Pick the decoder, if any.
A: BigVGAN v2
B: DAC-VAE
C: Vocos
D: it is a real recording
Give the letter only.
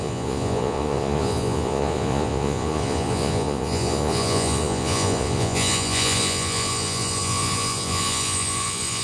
C